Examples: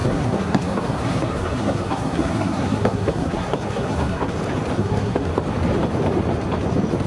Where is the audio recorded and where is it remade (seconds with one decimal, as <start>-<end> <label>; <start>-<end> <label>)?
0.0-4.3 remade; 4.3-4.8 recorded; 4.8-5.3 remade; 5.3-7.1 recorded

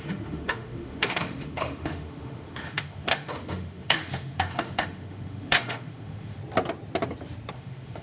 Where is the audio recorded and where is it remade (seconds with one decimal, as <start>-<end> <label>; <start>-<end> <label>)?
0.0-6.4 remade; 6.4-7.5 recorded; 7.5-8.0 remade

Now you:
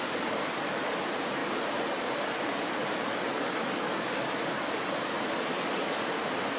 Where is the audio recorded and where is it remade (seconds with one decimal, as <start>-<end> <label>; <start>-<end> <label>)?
0.0-6.6 recorded

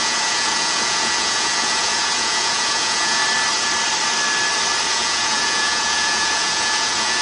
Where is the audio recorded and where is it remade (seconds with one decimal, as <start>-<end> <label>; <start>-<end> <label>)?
0.0-3.2 remade; 3.2-4.9 recorded; 4.9-7.2 remade

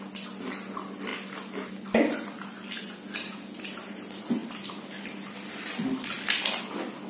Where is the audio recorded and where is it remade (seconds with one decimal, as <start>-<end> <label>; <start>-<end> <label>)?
0.0-7.1 recorded